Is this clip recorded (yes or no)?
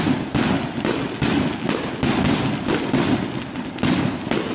yes